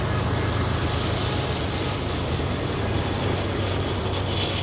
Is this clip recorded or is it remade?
recorded